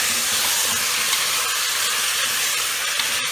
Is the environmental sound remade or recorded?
recorded